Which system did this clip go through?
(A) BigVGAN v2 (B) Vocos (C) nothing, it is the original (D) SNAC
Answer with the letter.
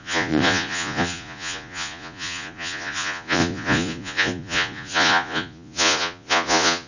B